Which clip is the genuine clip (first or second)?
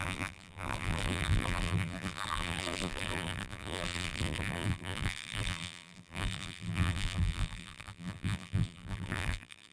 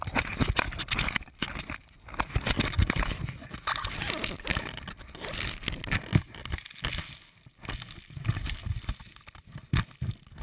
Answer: second